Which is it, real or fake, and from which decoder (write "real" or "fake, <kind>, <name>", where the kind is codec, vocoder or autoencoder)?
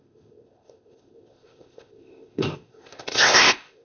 fake, codec, ZipCodec